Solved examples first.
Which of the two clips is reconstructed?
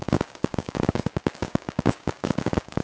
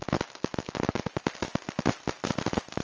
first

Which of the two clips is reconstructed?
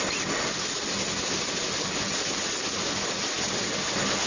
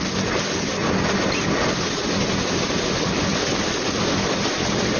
second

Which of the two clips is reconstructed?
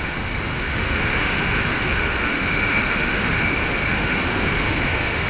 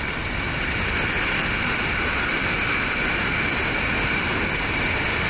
first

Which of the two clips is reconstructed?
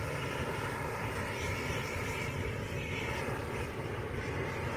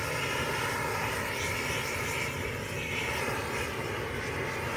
first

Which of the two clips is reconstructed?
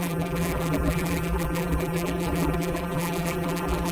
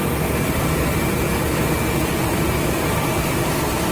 first